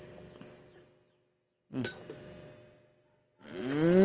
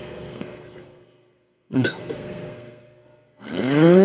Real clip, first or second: first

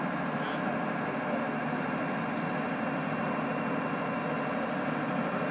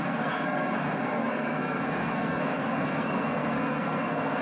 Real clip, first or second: first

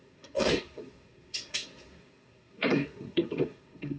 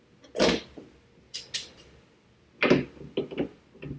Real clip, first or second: second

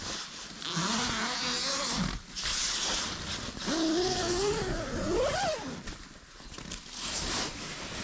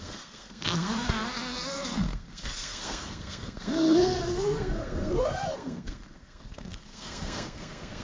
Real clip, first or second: first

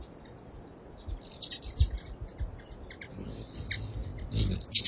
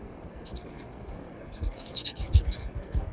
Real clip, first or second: first